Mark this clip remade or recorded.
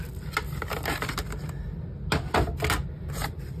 recorded